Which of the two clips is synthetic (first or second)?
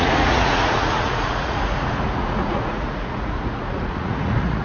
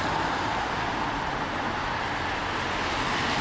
first